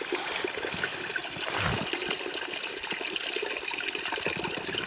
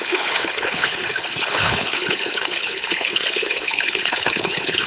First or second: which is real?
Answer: first